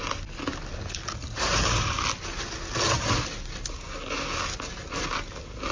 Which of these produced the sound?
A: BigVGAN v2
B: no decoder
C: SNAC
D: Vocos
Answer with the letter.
B